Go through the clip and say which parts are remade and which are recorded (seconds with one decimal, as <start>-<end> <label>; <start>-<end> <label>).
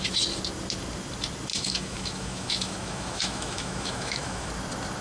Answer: 0.0-1.5 recorded; 1.5-4.5 remade; 4.5-5.0 recorded